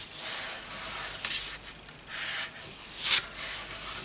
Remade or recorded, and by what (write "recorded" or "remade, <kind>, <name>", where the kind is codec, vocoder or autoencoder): recorded